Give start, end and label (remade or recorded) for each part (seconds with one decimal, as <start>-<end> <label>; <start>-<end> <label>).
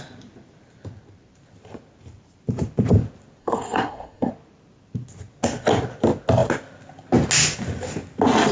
0.0-3.4 recorded; 3.4-4.3 remade; 4.3-8.5 recorded